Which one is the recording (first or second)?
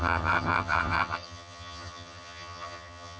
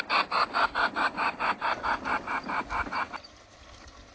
second